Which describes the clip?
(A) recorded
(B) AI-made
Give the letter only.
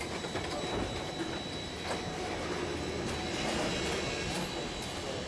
A